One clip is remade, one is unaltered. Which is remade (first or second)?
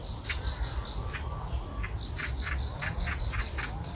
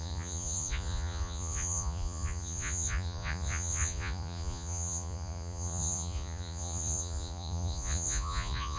second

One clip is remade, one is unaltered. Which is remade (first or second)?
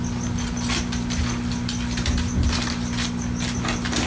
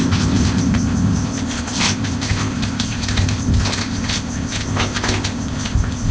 second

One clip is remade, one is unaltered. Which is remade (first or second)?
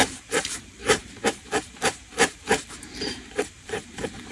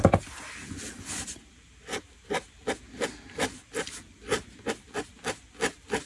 first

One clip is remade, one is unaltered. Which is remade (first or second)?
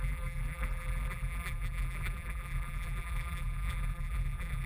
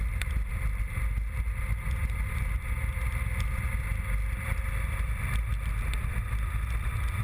first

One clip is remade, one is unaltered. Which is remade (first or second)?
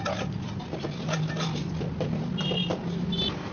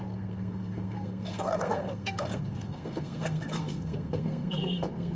second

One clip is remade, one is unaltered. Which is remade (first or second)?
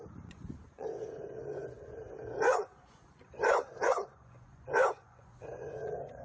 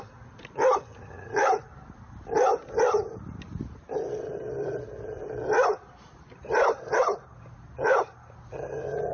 first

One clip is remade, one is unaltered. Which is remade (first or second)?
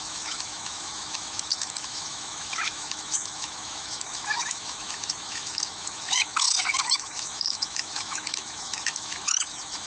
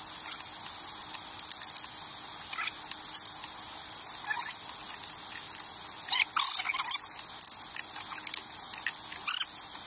first